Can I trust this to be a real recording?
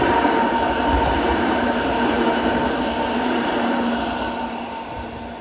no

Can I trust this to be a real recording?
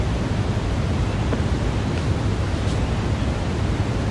yes